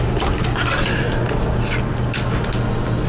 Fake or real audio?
real